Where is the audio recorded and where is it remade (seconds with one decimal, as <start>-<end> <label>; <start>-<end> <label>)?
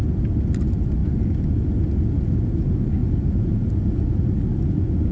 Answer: 0.0-5.1 recorded